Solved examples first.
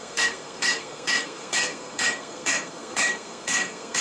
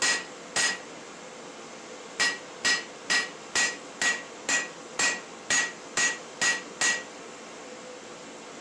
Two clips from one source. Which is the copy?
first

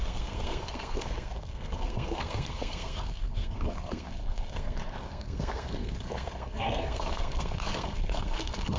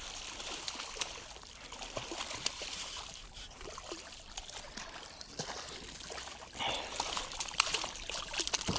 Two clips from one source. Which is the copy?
first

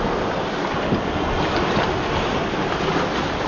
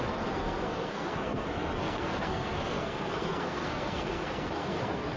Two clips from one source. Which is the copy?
second